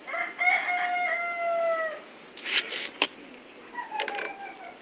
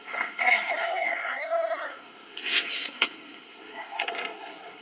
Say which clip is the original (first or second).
first